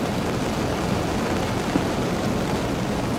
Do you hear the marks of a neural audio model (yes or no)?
no